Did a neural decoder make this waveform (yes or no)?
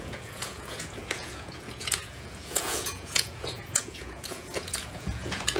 yes